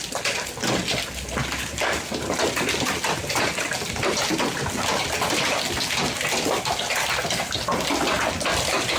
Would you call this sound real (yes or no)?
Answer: yes